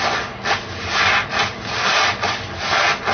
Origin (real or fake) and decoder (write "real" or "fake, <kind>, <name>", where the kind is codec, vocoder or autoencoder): real